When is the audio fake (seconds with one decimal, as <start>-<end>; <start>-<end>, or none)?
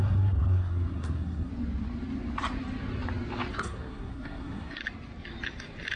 0.0-1.5; 3.5-4.8